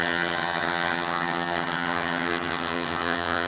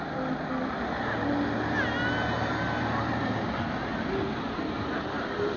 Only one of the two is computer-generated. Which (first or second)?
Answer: first